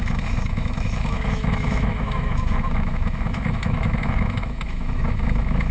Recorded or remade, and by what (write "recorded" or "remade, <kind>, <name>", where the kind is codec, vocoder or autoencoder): remade, autoencoder, DAC-VAE